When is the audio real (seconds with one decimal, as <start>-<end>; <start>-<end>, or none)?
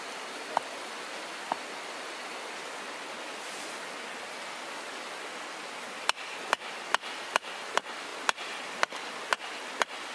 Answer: 0.0-10.1